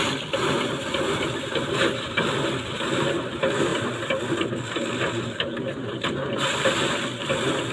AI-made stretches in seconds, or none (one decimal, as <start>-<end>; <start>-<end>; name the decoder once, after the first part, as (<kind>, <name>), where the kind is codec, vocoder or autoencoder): none